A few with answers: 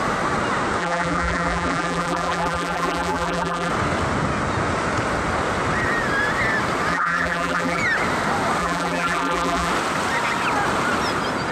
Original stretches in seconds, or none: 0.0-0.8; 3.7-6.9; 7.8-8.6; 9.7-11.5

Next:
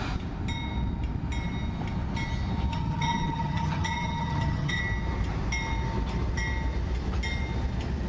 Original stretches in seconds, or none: 0.0-2.7; 4.8-8.1

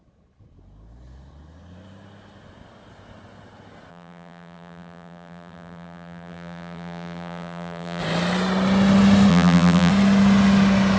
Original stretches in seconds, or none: 0.0-3.9; 8.0-9.3; 9.9-11.0

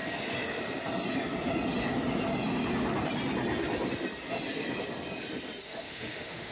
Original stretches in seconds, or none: 0.0-5.6